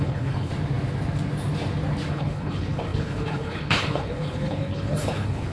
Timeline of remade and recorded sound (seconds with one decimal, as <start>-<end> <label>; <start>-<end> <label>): 0.0-0.5 remade; 0.5-2.1 recorded; 2.1-5.5 remade